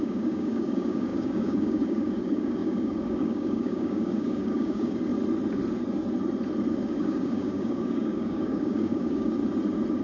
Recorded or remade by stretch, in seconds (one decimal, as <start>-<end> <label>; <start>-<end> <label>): 0.0-5.1 remade; 5.1-6.7 recorded; 6.7-9.4 remade; 9.4-10.0 recorded